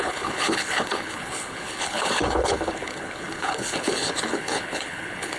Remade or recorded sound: remade